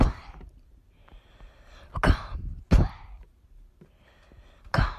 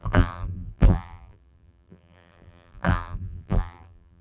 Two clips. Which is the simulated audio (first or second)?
second